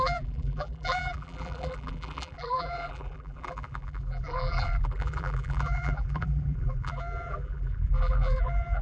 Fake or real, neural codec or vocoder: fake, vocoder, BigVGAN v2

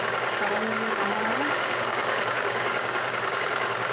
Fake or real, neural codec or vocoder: fake, codec, DAC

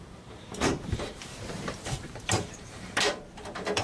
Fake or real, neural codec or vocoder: fake, vocoder, BigVGAN v2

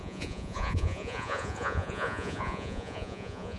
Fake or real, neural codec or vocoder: fake, vocoder, Vocos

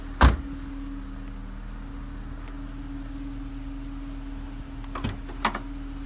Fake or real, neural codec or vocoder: real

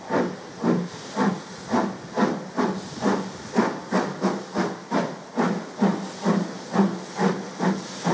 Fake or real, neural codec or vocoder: real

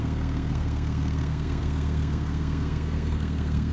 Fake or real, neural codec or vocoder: fake, codec, SNAC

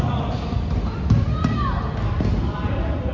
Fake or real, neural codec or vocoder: real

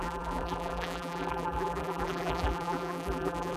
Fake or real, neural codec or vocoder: fake, vocoder, BigVGAN v2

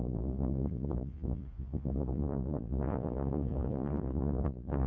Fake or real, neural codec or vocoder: fake, vocoder, Vocos